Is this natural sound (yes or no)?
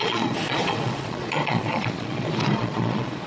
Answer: no